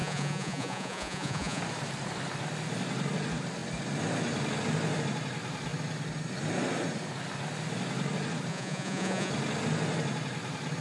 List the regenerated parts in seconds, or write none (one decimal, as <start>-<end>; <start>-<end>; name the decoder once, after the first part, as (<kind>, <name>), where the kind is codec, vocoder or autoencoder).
0.0-1.6 (vocoder, Vocos); 8.5-9.3